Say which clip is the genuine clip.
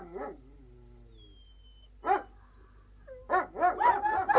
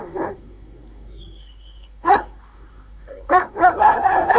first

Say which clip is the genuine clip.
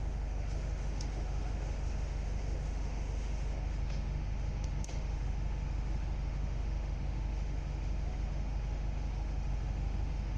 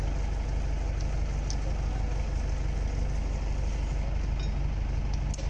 second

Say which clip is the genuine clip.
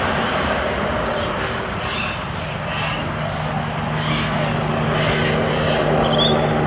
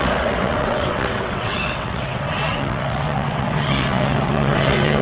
first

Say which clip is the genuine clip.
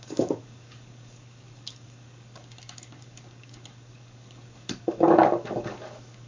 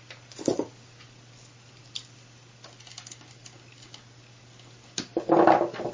second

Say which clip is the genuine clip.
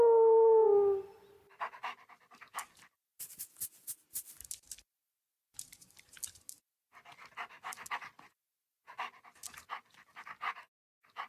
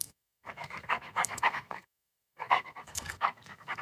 first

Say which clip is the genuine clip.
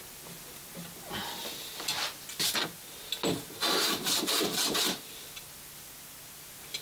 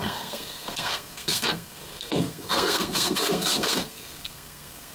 first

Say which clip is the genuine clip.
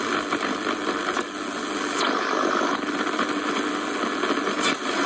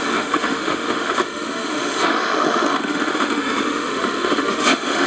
first